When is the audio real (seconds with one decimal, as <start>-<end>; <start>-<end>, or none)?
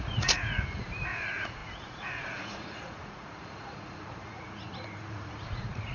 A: none